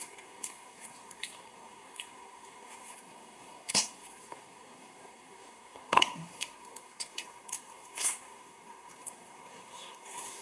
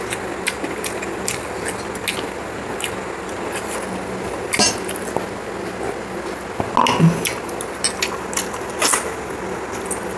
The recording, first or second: second